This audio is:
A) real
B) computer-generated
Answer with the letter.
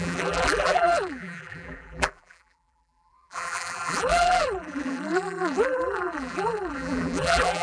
B